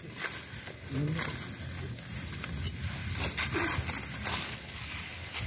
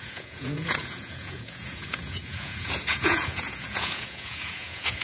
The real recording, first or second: first